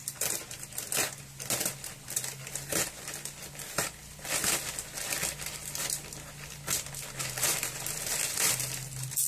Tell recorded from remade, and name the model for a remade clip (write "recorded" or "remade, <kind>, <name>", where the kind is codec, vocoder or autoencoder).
recorded